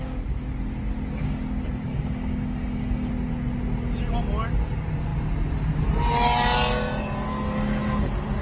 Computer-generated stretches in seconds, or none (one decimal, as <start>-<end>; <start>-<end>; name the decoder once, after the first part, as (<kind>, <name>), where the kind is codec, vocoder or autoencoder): 1.9-3.1 (codec, DAC)